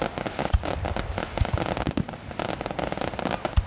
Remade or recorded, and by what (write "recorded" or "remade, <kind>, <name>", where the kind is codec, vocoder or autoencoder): recorded